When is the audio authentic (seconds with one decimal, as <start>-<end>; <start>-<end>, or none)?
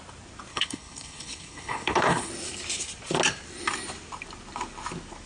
0.0-0.5; 2.3-5.3